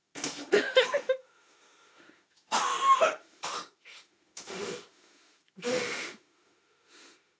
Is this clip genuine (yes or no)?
no